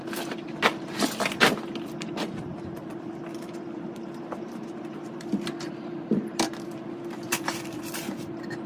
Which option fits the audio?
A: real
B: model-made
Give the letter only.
B